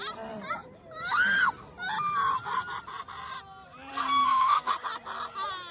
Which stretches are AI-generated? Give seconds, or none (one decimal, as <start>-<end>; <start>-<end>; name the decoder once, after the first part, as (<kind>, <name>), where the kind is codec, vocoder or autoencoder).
3.9-4.7 (codec, SNAC)